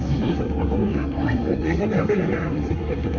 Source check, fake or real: fake